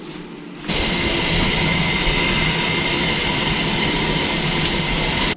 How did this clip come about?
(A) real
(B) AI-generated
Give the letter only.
A